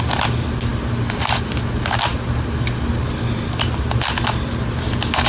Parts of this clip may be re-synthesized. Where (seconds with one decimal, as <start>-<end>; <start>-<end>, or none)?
none